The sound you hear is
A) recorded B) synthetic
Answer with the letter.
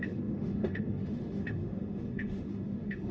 B